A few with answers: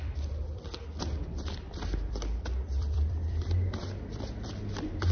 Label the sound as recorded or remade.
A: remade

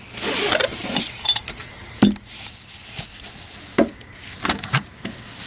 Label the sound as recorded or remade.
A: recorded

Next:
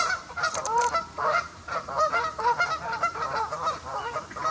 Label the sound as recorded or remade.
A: remade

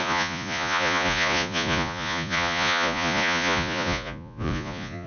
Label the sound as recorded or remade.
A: remade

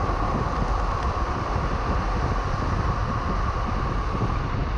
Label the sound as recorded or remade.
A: recorded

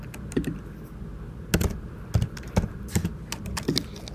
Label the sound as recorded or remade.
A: recorded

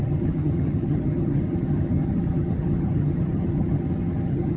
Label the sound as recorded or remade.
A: remade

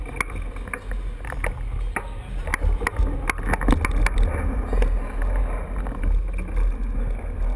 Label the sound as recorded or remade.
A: recorded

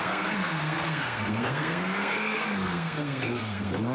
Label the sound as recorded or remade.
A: remade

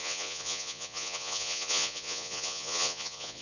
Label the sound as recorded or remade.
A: remade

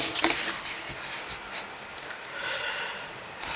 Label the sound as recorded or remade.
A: recorded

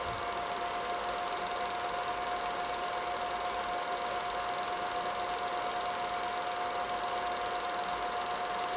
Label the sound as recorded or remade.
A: recorded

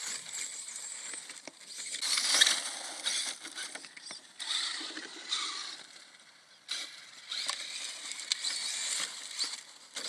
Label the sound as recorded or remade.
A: recorded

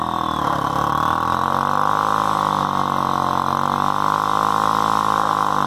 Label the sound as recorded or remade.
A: remade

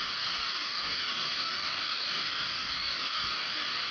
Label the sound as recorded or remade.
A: remade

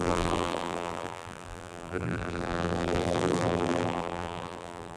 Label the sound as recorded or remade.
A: remade